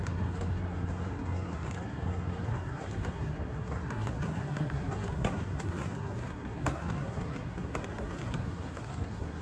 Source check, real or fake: fake